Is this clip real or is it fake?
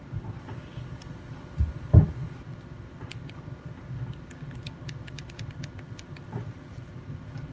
real